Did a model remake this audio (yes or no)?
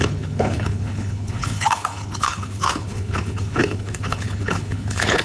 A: yes